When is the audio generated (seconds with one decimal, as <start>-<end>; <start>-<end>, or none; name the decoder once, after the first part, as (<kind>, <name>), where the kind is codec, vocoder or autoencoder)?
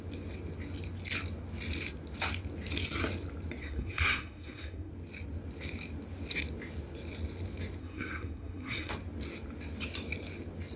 3.6-4.9 (codec, SNAC); 7.8-8.9